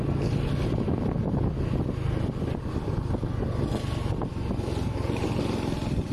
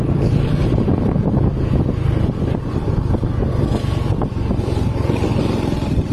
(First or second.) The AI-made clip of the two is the second